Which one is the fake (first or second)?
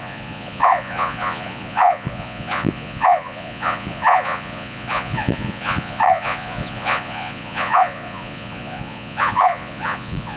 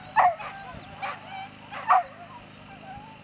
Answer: first